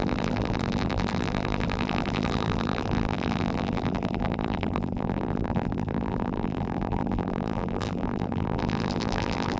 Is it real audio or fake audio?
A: fake